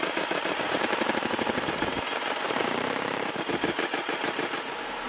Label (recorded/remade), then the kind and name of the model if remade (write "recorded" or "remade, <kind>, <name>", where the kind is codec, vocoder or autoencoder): remade, vocoder, BigVGAN v2